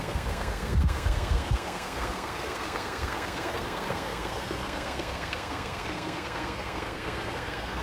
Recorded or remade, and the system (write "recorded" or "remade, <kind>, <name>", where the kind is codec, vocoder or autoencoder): remade, codec, SNAC